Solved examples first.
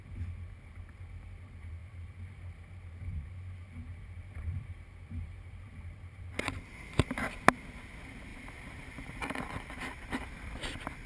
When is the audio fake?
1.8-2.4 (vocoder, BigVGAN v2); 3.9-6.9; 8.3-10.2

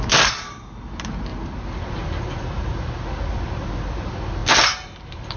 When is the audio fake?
none

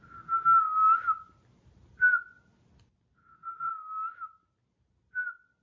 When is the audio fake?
3.1-3.7 (vocoder, Vocos)

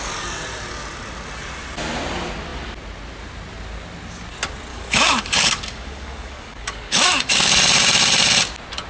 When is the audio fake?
4.7-7.5 (codec, DAC)